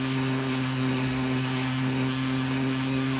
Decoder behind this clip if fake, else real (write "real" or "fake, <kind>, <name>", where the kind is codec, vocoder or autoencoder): fake, codec, SNAC